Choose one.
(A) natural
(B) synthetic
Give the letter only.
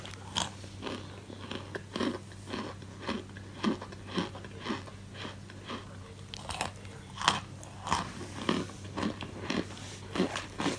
A